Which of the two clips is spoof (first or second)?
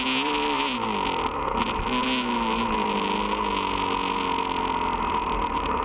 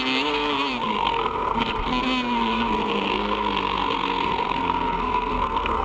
second